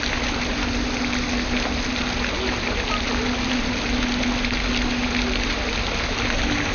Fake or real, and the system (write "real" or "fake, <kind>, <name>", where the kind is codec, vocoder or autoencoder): real